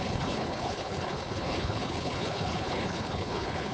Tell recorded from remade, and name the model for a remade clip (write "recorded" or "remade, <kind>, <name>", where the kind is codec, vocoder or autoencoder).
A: remade, codec, HILCodec